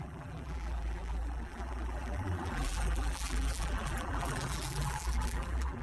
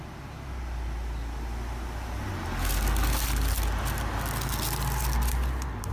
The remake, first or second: first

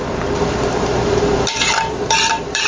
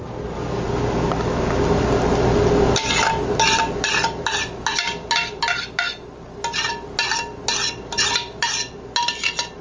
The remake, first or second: first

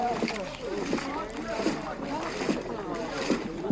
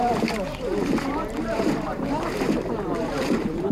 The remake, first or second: second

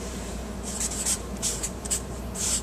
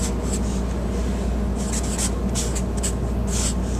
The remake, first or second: first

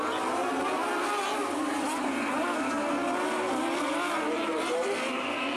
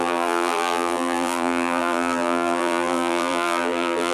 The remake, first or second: second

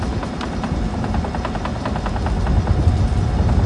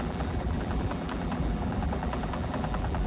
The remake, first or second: second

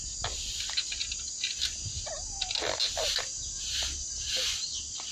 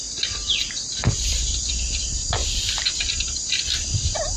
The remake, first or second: second